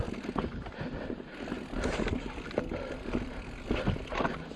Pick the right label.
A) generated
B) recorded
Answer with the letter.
B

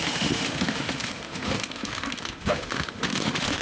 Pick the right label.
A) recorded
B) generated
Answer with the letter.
B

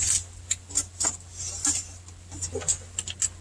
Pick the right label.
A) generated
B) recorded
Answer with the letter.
B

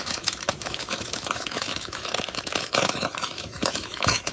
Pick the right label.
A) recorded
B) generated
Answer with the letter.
B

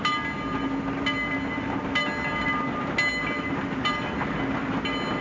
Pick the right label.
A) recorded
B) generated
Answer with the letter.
A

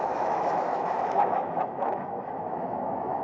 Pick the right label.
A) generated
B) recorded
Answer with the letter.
A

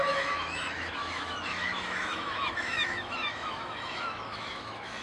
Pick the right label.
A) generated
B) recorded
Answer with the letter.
A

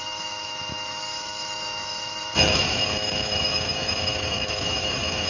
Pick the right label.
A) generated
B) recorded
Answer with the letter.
A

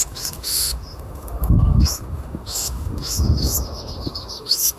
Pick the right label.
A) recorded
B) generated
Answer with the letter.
B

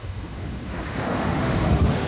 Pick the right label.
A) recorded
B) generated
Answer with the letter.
B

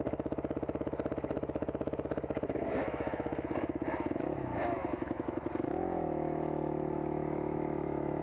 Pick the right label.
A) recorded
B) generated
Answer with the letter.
B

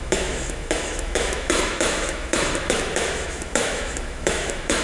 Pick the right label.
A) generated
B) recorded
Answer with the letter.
A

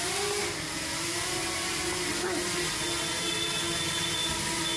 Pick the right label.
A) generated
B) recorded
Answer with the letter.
B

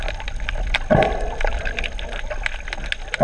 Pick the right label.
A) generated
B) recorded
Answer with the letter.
B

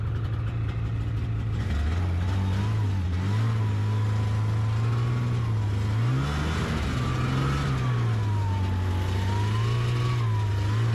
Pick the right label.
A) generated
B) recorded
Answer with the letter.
B